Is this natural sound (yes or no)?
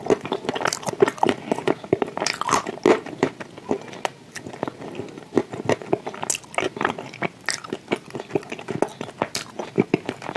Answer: yes